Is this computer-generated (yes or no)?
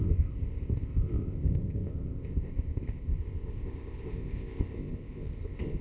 yes